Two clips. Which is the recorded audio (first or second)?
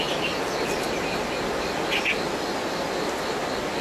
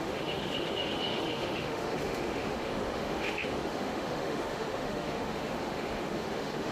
first